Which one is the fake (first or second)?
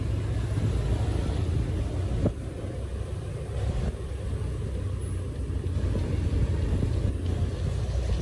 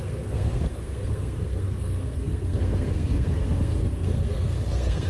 second